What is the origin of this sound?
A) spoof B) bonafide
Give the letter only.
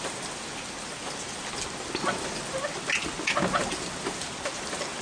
B